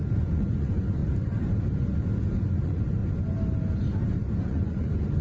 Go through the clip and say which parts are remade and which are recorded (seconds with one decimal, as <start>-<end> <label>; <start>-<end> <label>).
0.0-1.0 remade; 1.0-2.5 recorded; 2.5-3.0 remade; 3.0-4.4 recorded; 4.4-5.2 remade